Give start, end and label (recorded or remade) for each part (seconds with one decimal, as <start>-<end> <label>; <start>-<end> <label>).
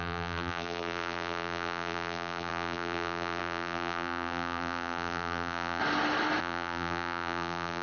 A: 0.0-5.8 remade; 5.8-6.4 recorded; 6.4-7.8 remade